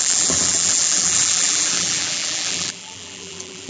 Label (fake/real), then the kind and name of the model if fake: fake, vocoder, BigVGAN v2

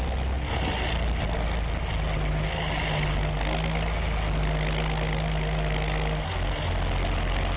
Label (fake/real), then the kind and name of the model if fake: real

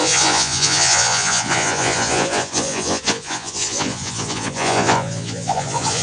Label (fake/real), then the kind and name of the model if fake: fake, vocoder, Vocos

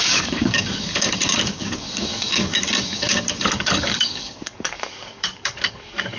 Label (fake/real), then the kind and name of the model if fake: fake, codec, DAC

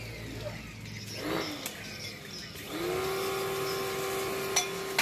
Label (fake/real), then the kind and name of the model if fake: real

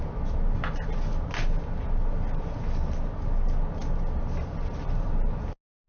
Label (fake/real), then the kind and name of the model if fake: real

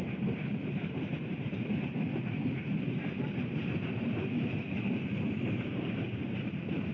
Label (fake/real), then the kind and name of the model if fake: fake, vocoder, BigVGAN v2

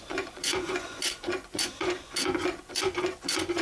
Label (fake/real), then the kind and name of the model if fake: fake, vocoder, Vocos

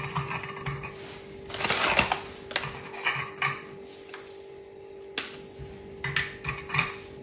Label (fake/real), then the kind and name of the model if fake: real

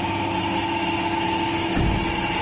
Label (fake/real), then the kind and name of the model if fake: real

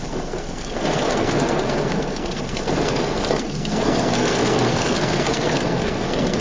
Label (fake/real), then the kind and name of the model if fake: fake, codec, SNAC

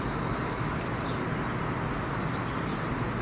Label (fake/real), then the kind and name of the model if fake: real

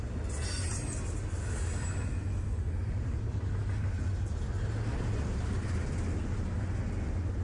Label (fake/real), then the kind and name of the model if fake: real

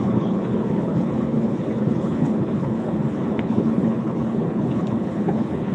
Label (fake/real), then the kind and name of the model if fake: fake, codec, HILCodec